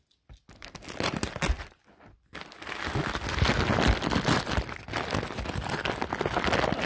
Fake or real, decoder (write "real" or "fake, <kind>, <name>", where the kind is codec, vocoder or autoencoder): real